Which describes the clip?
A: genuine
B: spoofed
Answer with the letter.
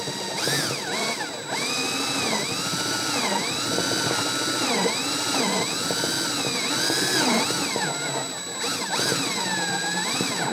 A